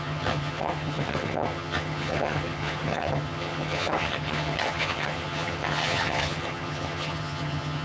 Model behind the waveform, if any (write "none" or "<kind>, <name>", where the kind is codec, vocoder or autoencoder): vocoder, HiFi-GAN